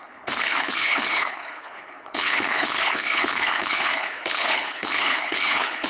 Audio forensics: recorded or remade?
remade